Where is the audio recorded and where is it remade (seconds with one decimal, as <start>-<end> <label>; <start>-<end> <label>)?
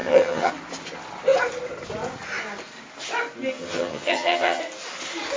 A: 0.0-0.5 remade; 0.5-3.6 recorded; 3.6-4.6 remade; 4.6-5.4 recorded